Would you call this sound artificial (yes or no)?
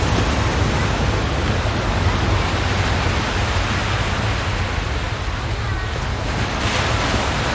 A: no